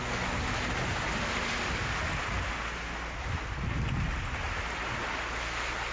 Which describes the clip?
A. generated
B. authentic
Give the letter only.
B